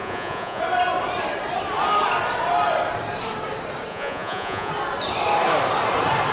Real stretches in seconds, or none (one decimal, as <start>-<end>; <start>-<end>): 0.6-3.9; 4.7-6.3